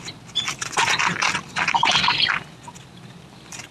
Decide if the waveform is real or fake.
real